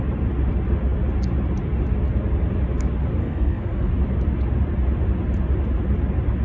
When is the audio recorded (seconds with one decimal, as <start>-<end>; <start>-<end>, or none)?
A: 0.0-3.2; 3.9-6.4

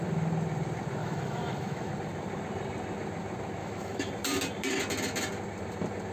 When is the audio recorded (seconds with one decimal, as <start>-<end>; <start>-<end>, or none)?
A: 0.0-1.0; 1.9-3.6; 4.1-6.1